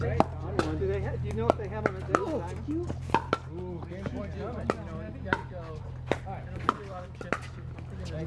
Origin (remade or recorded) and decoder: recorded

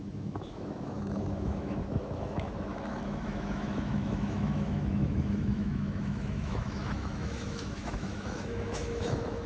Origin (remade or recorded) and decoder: remade, autoencoder, DAC-VAE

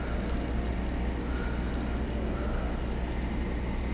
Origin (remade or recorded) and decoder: recorded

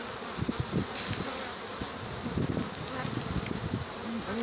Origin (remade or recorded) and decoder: recorded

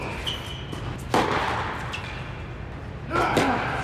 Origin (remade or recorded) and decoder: recorded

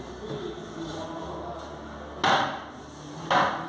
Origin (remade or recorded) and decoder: recorded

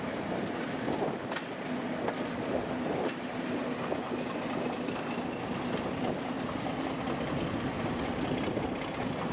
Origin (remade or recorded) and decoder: recorded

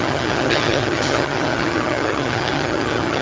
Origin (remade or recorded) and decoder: remade, vocoder, HiFi-GAN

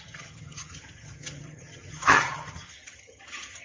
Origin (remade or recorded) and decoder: remade, vocoder, HiFi-GAN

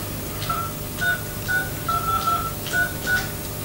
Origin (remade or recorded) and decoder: recorded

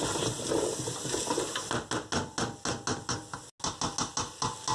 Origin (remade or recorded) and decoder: recorded